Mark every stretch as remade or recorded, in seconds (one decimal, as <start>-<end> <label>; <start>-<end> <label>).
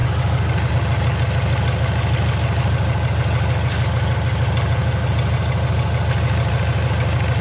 0.0-7.4 recorded